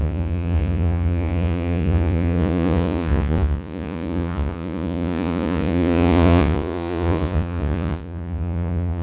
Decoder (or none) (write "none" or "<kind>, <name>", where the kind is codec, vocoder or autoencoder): vocoder, Vocos